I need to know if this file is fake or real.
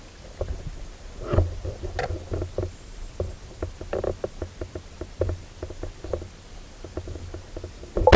real